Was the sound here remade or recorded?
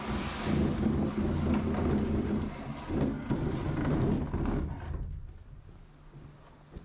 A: recorded